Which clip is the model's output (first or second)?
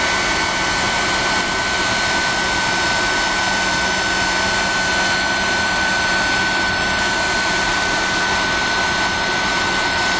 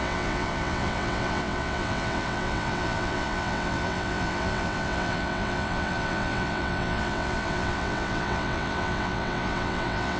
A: second